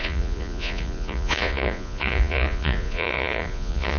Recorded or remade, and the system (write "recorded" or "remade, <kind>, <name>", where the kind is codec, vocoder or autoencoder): remade, vocoder, Vocos